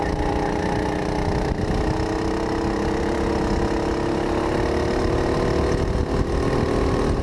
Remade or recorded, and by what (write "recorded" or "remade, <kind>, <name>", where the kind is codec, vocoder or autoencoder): recorded